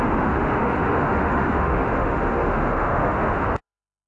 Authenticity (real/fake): fake